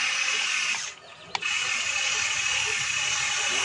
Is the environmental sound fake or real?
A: real